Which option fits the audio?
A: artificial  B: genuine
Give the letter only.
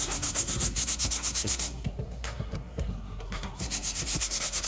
A